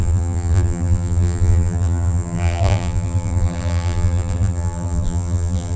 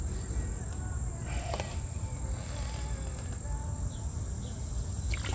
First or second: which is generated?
first